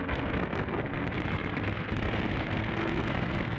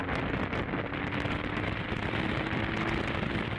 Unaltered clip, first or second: second